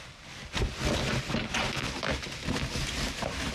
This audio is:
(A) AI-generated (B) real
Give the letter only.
B